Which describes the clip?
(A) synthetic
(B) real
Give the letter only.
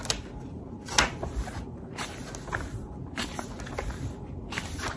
B